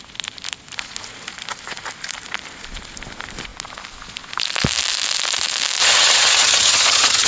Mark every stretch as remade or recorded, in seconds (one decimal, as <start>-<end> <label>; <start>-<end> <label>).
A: 0.0-5.8 recorded; 5.8-7.3 remade